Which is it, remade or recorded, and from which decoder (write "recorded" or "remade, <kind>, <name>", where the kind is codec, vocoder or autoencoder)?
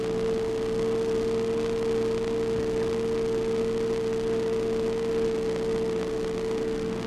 recorded